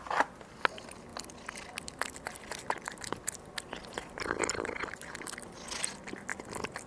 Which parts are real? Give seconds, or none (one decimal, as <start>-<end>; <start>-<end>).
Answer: 0.0-6.9